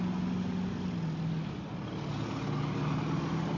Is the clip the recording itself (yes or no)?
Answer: yes